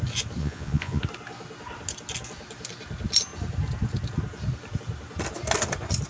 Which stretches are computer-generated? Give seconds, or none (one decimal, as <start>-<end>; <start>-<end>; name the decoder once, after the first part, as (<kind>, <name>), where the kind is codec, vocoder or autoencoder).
0.4-1.0 (vocoder, Vocos)

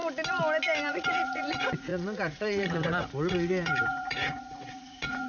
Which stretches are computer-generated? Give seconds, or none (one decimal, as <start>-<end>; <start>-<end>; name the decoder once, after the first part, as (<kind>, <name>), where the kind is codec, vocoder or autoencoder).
0.9-5.3 (vocoder, Vocos)

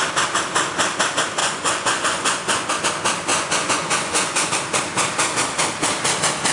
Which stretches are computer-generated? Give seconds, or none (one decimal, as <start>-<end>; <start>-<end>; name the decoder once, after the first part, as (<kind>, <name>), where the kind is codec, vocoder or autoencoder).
1.4-2.7 (vocoder, Vocos); 3.3-4.5

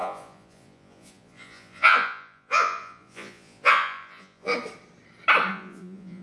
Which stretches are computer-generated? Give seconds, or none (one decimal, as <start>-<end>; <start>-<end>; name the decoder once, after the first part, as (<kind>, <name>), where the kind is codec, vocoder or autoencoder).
0.0-4.5 (vocoder, Vocos); 5.5-6.2

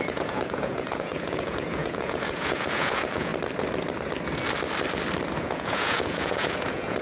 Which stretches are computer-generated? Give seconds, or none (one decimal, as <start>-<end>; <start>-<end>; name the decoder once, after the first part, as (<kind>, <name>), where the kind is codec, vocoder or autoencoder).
0.0-3.3 (vocoder, Vocos); 5.4-7.0

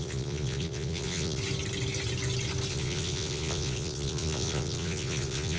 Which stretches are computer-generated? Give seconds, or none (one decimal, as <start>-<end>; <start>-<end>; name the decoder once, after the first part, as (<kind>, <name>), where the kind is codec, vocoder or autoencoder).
0.0-1.4 (vocoder, Vocos); 2.7-5.6

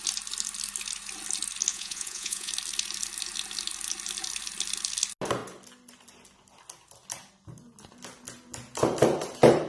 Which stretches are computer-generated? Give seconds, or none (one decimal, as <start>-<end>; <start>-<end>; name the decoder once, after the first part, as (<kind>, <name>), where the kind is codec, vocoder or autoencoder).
1.7-2.5 (vocoder, Vocos)